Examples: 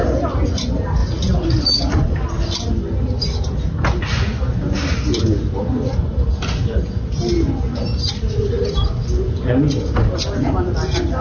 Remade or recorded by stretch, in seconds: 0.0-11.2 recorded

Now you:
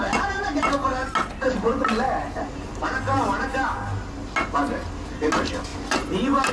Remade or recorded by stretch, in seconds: 0.0-6.5 recorded

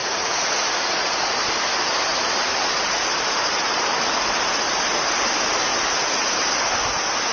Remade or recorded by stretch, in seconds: 0.0-1.3 remade; 1.3-7.3 recorded